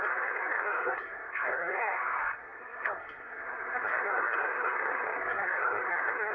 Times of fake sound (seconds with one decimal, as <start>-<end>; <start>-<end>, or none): 0.0-6.3